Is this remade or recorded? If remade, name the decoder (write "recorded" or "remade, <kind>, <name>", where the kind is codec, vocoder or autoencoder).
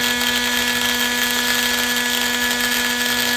recorded